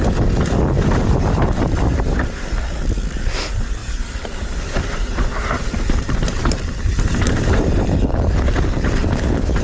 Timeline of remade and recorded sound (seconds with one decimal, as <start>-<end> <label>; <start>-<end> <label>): 0.0-1.0 recorded; 1.0-9.6 remade